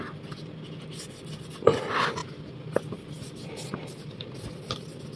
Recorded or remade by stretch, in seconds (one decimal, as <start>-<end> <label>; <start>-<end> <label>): 0.0-5.2 recorded